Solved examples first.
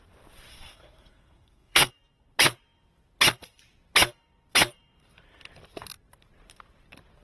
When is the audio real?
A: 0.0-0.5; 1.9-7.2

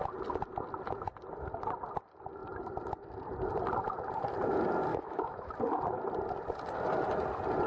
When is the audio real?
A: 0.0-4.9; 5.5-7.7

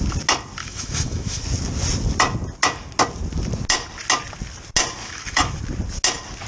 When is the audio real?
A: 0.0-0.6; 1.4-5.0; 5.6-6.5

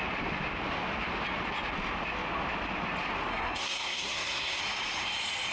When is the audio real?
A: 0.0-3.3; 4.6-5.5

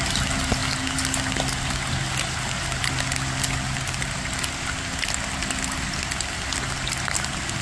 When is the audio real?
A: 0.0-7.6